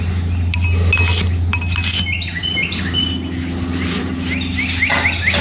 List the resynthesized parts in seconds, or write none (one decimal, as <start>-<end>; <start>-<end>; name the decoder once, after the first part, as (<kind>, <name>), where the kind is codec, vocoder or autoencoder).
none